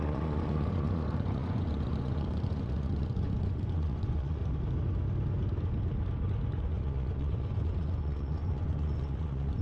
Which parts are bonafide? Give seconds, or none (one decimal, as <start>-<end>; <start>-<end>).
4.4-6.6